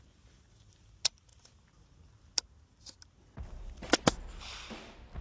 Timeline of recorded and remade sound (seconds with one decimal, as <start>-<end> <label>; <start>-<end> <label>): 0.0-5.2 recorded